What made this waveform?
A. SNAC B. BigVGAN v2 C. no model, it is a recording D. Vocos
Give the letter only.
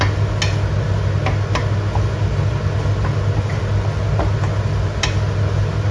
C